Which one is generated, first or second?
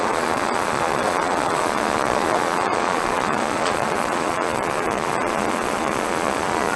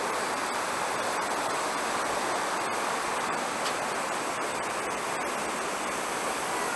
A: first